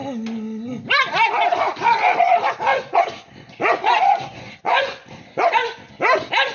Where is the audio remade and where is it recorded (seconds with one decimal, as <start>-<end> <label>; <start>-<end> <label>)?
0.0-2.7 recorded; 2.7-5.9 remade; 5.9-6.5 recorded